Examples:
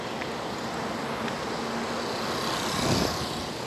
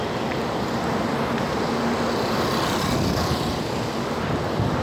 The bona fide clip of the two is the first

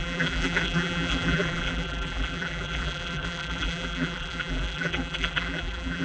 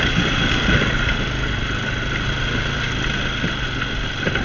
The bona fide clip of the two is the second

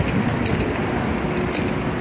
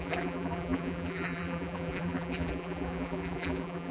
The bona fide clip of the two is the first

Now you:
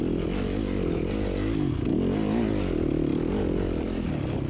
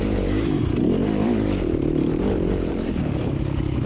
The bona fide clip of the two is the first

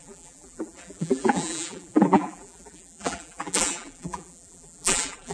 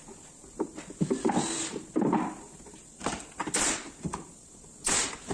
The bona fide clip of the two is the second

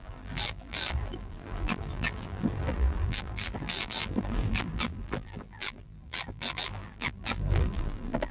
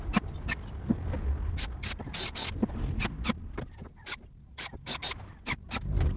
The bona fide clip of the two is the second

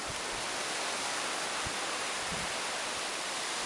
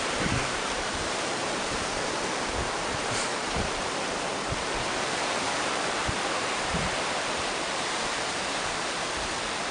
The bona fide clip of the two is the first